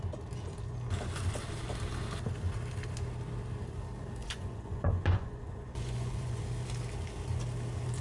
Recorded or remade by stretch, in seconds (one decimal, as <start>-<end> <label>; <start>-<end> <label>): 0.0-4.2 recorded; 4.2-6.4 remade; 6.4-8.0 recorded